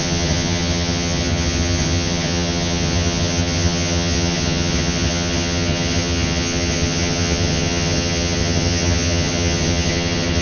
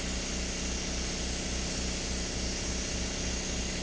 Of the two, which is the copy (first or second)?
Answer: first